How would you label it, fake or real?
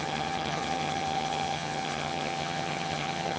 fake